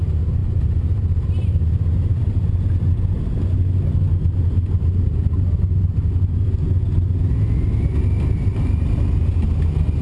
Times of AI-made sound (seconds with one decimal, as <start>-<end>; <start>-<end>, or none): 0.4-2.3